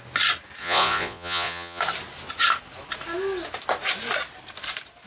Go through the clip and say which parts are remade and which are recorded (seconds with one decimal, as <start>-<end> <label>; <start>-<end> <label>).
0.0-0.6 recorded; 0.6-1.8 remade; 1.8-5.1 recorded